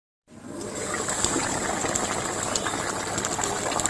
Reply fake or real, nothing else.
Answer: real